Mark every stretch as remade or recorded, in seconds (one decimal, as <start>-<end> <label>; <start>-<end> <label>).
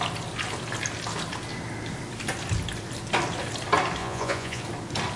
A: 0.0-4.0 recorded; 4.0-4.6 remade; 4.6-5.2 recorded